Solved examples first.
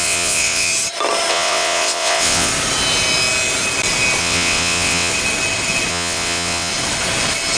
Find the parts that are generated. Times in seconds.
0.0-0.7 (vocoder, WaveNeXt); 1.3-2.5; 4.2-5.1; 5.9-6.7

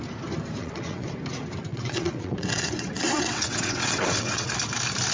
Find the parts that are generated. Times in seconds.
0.6-1.1 (vocoder, WaveNeXt); 1.7-4.5

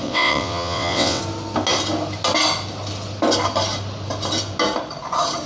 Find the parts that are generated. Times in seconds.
0.0-1.2 (vocoder, WaveNeXt)

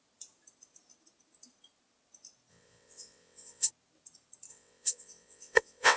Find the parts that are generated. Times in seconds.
2.5-3.7 (vocoder, WaveNeXt); 4.5-6.0

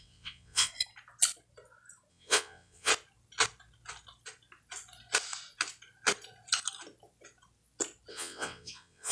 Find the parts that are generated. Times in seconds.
0.0-0.7 (vocoder, WaveNeXt); 2.1-2.9; 8.1-9.1

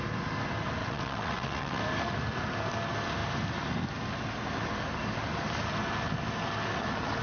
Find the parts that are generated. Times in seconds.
0.8-1.8 (vocoder, WaveNeXt)

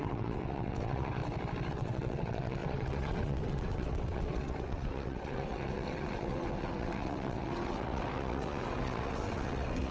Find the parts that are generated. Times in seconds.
0.0-1.2 (vocoder, WaveNeXt); 1.7-9.9

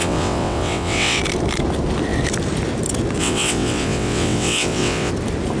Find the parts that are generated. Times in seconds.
0.0-1.2 (vocoder, WaveNeXt); 3.2-5.1